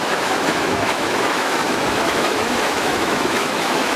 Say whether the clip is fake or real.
fake